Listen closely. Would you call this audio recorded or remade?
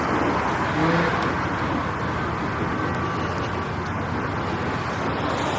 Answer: recorded